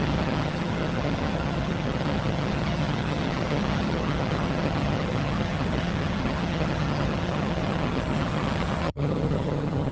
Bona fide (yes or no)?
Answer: no